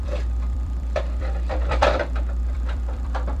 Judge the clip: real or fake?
fake